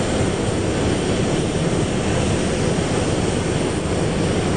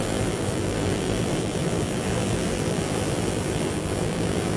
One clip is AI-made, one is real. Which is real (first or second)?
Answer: first